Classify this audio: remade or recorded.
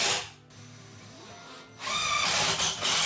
recorded